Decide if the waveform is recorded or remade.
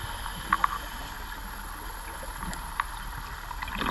recorded